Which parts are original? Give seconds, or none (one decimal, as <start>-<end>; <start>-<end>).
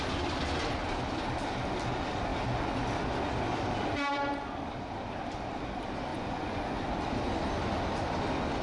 0.0-6.1; 6.8-8.6